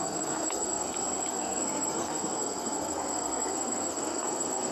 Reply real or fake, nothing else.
fake